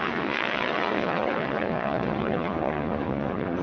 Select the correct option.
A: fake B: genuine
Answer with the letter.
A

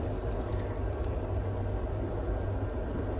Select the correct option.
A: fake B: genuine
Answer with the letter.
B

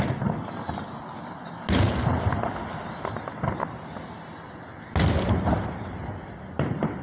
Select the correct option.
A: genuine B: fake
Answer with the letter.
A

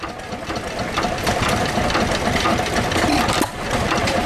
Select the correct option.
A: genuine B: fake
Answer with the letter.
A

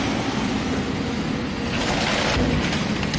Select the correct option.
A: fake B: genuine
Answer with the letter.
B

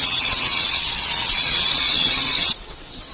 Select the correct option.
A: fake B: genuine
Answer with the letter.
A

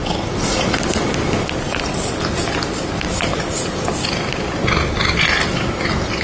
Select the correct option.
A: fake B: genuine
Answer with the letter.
B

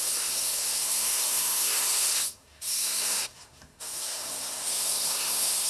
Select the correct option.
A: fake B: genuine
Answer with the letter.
A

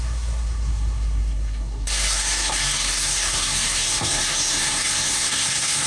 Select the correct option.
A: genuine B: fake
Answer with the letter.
B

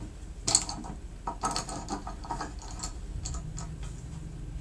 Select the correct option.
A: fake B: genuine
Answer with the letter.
B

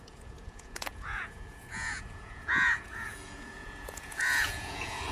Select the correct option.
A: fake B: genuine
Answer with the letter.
A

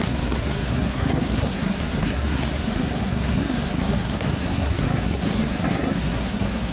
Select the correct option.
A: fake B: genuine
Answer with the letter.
A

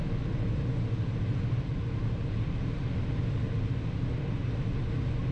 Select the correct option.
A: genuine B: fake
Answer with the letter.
A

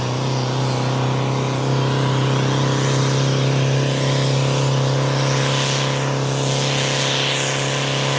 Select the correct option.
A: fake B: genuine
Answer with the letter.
B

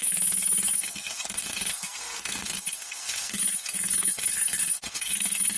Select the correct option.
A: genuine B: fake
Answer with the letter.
B